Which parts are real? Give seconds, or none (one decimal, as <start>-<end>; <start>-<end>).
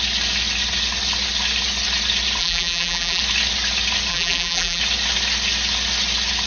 0.0-2.4; 3.2-4.1; 4.8-6.5